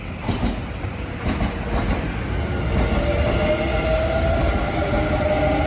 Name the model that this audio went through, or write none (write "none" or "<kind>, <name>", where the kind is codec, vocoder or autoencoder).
none